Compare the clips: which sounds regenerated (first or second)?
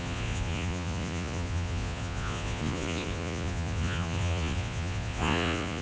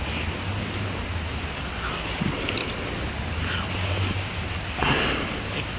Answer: first